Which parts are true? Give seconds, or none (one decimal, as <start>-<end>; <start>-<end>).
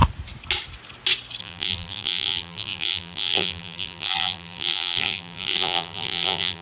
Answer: 0.0-1.4